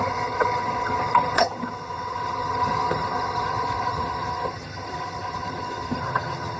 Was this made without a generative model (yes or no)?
no